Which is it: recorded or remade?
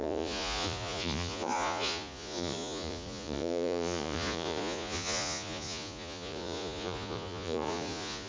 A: remade